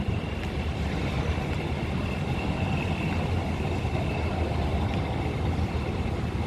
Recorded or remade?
recorded